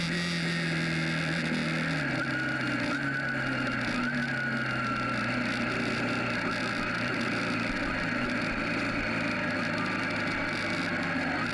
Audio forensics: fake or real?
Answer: real